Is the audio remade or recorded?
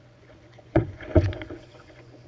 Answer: remade